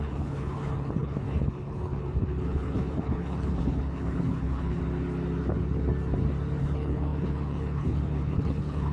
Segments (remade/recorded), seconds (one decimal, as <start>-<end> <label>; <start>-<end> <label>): 0.0-4.8 remade; 4.8-6.6 recorded; 6.6-8.9 remade